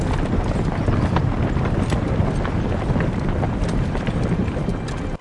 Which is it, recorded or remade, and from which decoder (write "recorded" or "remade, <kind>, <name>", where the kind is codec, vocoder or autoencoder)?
recorded